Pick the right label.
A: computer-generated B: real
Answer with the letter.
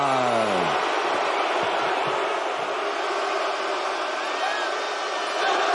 B